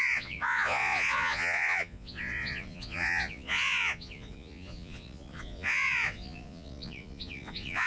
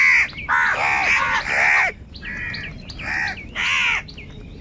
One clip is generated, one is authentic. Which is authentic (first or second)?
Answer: second